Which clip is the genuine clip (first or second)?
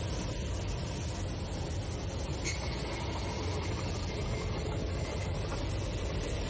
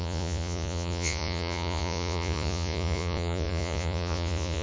first